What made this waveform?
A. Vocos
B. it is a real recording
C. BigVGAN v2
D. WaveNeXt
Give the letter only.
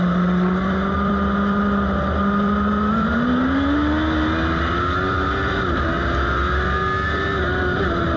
B